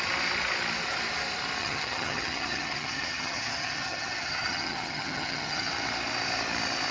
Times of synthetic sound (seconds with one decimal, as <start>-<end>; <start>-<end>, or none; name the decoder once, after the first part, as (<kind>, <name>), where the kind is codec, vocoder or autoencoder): 1.6-5.7 (vocoder, HiFi-GAN)